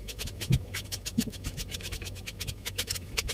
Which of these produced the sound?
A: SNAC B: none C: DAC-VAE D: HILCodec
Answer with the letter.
C